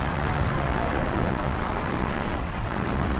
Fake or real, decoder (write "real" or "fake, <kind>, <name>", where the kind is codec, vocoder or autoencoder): fake, vocoder, WaveNeXt